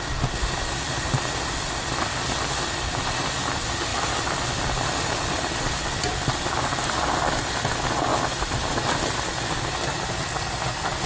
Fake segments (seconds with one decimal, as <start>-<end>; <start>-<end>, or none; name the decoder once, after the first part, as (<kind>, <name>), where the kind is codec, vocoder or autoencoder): 3.9-6.9 (vocoder, BigVGAN v2); 8.1-8.6